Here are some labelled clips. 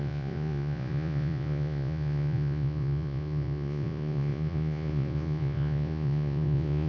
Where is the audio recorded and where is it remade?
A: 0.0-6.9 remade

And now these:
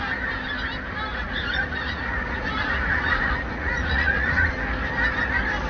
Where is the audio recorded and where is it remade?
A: 0.0-1.1 recorded; 1.1-4.5 remade; 4.5-5.7 recorded

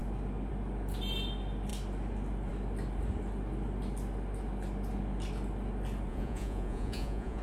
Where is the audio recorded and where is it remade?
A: 0.0-6.1 recorded; 6.1-7.4 remade

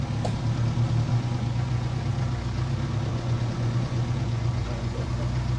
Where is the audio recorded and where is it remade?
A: 0.0-1.1 recorded; 1.1-2.0 remade; 2.0-3.1 recorded; 3.1-5.1 remade; 5.1-5.6 recorded

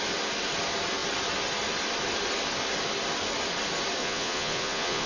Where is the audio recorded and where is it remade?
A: 0.0-4.0 recorded; 4.0-5.1 remade

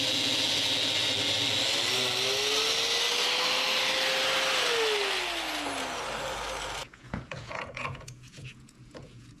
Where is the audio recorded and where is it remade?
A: 0.0-6.8 recorded; 6.8-9.4 remade

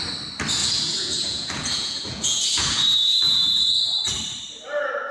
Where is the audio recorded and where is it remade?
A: 0.0-0.6 recorded; 0.6-3.7 remade; 3.7-5.1 recorded

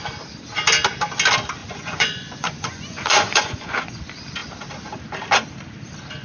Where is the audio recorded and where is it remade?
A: 0.0-1.6 recorded; 1.6-4.0 remade; 4.0-6.2 recorded